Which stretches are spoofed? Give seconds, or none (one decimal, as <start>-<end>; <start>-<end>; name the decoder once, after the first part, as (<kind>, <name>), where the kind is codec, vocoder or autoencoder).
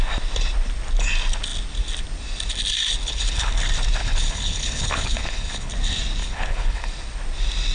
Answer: 3.0-3.5 (codec, HILCodec); 4.0-5.7; 6.2-6.9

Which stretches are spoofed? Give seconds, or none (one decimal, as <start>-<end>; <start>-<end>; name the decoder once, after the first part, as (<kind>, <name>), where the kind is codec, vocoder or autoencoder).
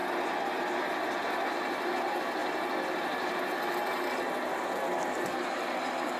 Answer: none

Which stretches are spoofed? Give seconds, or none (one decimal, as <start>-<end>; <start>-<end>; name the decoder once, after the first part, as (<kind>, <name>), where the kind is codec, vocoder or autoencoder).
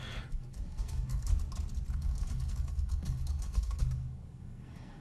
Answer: 0.0-1.3 (codec, SNAC); 1.9-5.0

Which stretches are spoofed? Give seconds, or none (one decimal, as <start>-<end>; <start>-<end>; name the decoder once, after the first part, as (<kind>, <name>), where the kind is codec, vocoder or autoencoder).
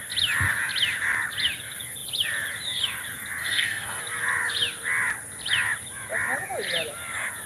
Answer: 3.4-4.0 (codec, SNAC)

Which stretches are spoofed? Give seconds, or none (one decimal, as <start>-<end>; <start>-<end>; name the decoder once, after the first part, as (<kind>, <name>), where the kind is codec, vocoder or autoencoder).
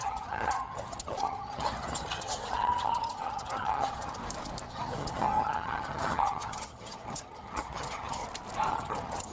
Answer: 0.0-4.2 (vocoder, HiFi-GAN); 4.7-8.2; 8.7-9.3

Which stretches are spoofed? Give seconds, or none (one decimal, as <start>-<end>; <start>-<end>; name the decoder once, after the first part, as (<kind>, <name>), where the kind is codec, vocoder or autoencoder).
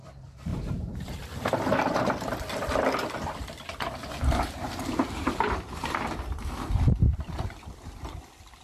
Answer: 0.5-1.5 (vocoder, BigVGAN v2); 4.0-6.0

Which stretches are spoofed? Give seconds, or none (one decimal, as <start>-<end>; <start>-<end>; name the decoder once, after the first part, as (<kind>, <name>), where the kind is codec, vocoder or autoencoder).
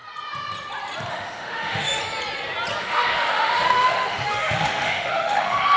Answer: 1.1-2.0 (autoencoder, DAC-VAE); 2.8-5.8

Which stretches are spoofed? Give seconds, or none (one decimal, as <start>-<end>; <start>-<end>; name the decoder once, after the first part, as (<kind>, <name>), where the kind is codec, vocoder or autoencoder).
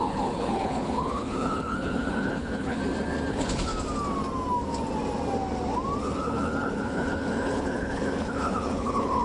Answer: 0.0-2.8 (codec, HILCodec); 3.3-3.7; 6.0-9.2